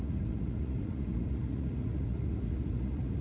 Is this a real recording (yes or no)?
no